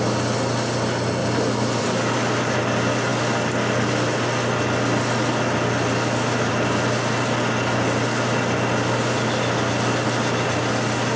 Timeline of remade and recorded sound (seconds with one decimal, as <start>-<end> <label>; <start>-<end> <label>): 0.0-11.2 recorded